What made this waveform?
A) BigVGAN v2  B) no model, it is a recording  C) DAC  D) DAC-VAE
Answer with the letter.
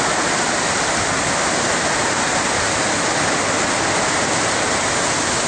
B